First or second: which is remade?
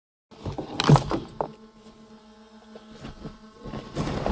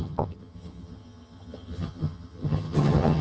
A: second